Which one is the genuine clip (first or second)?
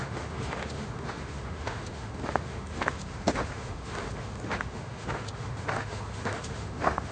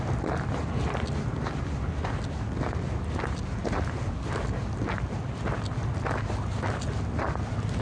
second